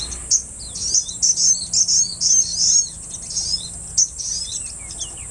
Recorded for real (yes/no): yes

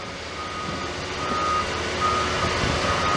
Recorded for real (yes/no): yes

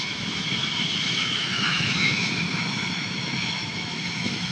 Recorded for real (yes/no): no